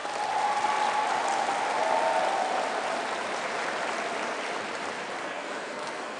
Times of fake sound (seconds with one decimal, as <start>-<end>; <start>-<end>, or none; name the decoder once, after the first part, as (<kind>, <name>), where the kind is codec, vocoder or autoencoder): 5.2-6.2 (codec, SNAC)